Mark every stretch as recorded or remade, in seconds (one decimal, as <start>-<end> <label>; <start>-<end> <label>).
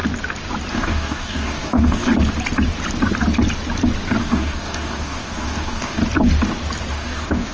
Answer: 0.0-0.7 recorded; 0.7-2.1 remade; 2.1-4.2 recorded; 4.2-6.0 remade; 6.0-6.9 recorded; 6.9-7.5 remade